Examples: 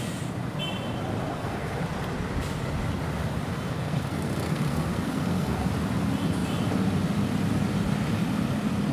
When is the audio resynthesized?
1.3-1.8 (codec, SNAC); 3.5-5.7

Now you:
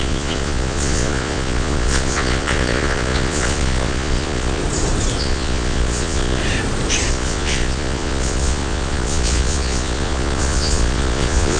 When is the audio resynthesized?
0.0-4.6 (vocoder, Vocos); 5.2-6.4; 7.1-11.6

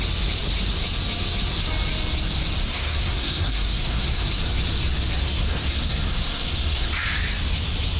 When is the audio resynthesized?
2.6-4.3 (codec, SNAC); 5.4-6.9

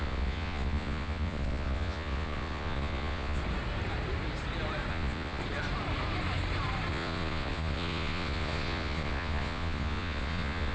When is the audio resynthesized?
0.0-3.4 (vocoder, Vocos); 4.9-5.4; 6.9-10.7

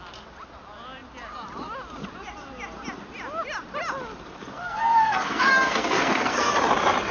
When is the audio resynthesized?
4.5-6.5 (codec, SNAC)

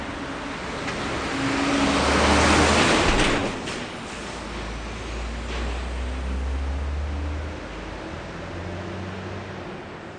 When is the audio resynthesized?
none

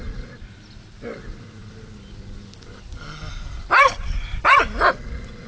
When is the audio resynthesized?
none

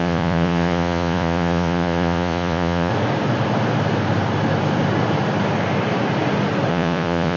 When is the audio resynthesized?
0.0-2.9 (vocoder, Vocos); 6.7-7.4